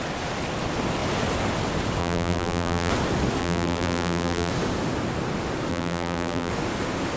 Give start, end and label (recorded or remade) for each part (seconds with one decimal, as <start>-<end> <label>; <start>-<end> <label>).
0.0-2.0 recorded; 2.0-2.9 remade; 2.9-3.4 recorded; 3.4-4.5 remade; 4.5-5.7 recorded; 5.7-6.5 remade; 6.5-7.2 recorded